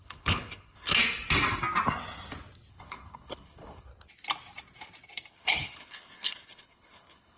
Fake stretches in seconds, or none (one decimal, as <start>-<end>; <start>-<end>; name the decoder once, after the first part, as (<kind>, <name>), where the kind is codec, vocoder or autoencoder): 0.0-0.9 (codec, HILCodec); 2.7-3.9; 5.3-7.4